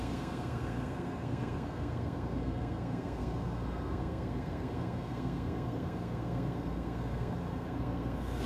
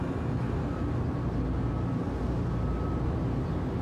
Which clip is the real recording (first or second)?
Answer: second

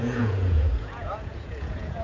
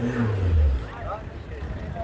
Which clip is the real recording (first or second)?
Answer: second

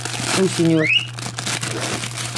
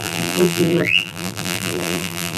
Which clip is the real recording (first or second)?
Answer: first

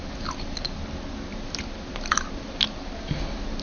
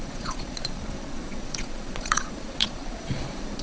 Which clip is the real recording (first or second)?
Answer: first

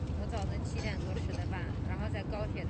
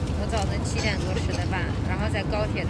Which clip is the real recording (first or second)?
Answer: second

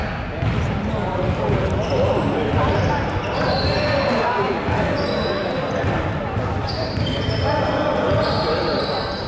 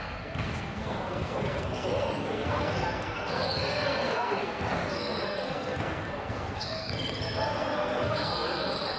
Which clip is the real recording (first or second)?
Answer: first